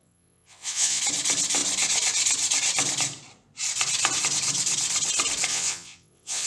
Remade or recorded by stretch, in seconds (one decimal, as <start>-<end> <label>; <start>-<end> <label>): 0.0-1.0 remade; 1.0-5.5 recorded; 5.5-6.5 remade